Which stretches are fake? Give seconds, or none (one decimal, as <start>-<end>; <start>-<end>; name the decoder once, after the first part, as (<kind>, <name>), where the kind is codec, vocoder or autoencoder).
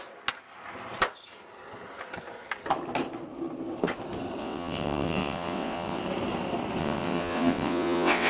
4.4-6.0 (vocoder, WaveNeXt); 6.8-8.3